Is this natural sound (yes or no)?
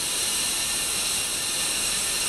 yes